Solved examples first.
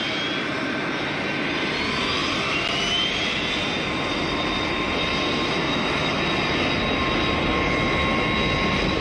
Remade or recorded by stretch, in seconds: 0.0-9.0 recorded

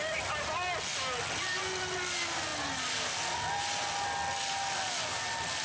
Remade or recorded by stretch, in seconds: 0.0-5.6 recorded

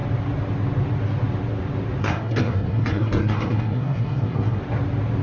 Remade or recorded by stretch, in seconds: 0.0-2.0 recorded; 2.0-4.6 remade; 4.6-5.2 recorded

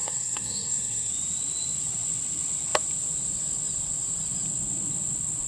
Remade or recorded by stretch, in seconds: 0.0-1.1 remade; 1.1-5.5 recorded